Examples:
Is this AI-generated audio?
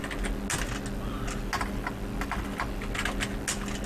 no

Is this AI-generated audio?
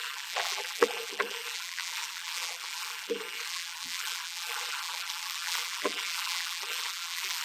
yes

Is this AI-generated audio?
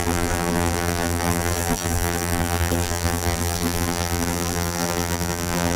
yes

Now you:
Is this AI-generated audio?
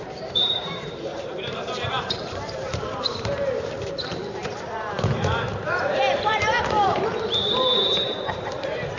yes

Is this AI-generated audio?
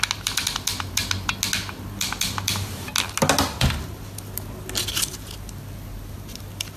no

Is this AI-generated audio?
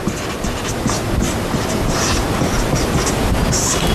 no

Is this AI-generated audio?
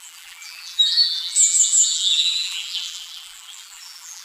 yes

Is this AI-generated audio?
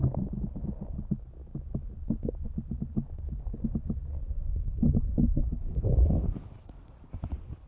no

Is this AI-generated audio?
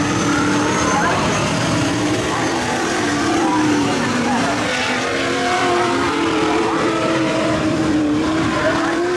yes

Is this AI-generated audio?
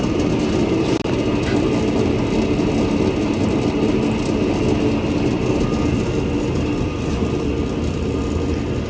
no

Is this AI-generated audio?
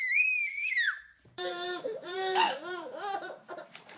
yes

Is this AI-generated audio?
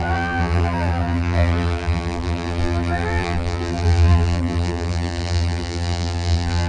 yes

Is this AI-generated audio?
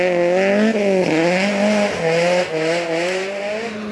no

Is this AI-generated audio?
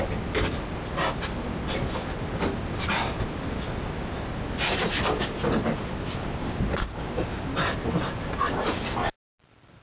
no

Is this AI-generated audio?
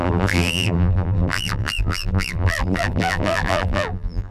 yes